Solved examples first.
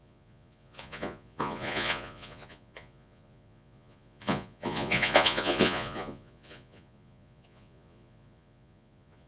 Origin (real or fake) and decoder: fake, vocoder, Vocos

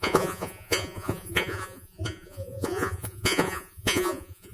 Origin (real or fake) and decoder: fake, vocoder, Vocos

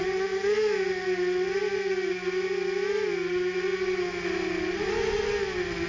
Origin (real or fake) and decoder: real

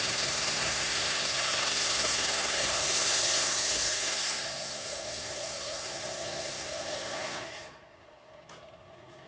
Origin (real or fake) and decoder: fake, codec, SNAC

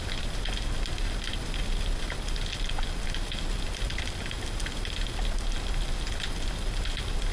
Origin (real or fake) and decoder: real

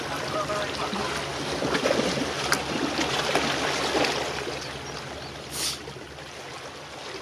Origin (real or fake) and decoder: real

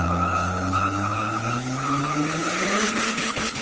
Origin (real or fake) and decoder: fake, codec, HILCodec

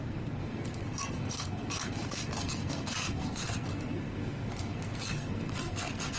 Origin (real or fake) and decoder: fake, codec, SNAC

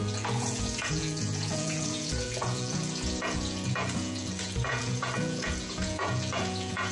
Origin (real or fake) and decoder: fake, vocoder, Vocos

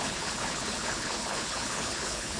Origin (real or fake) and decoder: fake, codec, HILCodec